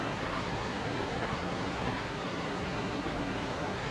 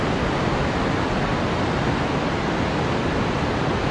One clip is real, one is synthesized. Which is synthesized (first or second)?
first